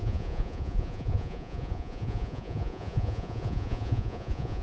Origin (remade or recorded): remade